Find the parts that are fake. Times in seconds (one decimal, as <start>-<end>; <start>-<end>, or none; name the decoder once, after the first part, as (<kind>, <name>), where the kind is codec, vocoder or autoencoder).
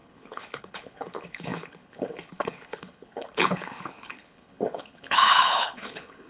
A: 0.0-6.3 (codec, HILCodec)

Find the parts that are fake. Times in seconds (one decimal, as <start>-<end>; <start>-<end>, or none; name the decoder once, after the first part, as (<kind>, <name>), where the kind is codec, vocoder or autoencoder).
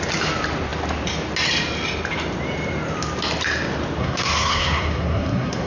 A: 4.0-5.7 (codec, SNAC)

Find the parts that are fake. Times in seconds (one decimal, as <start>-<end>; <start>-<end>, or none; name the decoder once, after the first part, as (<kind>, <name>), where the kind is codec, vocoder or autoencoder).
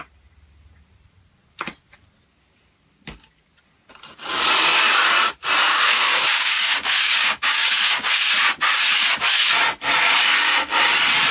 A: 5.7-8.3 (codec, DAC)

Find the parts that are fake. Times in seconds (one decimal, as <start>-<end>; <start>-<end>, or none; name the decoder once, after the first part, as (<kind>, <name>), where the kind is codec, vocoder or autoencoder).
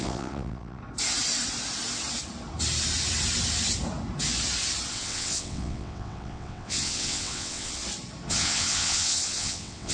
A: 0.0-0.8 (vocoder, WaveNeXt); 4.9-7.8; 8.3-9.9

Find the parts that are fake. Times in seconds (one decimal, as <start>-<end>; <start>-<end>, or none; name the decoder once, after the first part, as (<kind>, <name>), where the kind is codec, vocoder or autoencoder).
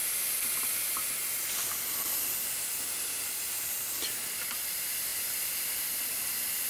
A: none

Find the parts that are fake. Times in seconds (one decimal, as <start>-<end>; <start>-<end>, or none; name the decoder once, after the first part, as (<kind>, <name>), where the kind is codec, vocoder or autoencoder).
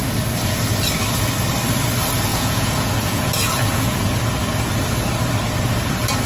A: 2.3-4.2 (vocoder, Vocos)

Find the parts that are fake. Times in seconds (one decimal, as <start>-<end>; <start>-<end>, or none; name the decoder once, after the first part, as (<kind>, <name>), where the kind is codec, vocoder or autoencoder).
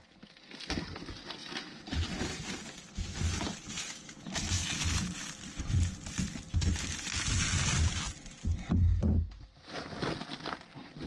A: 1.4-2.5 (vocoder, BigVGAN v2)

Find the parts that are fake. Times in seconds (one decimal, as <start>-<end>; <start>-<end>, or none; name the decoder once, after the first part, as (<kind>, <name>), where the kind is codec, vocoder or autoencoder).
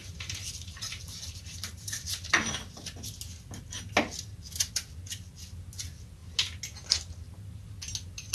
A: 0.0-2.1 (vocoder, BigVGAN v2)